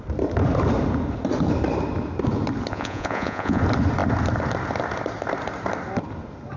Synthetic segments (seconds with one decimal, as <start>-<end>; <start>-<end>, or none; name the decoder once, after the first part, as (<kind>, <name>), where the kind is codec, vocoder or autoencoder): 2.7-3.6 (vocoder, Vocos)